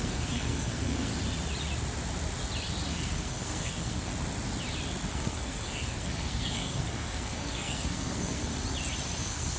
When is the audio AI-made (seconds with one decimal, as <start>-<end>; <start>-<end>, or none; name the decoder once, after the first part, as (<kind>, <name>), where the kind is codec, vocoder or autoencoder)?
0.0-1.1 (codec, SNAC); 2.9-4.1; 5.1-8.5; 9.2-9.6